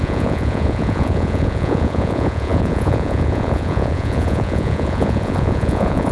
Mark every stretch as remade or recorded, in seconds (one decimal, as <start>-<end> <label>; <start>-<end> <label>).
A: 0.0-6.1 remade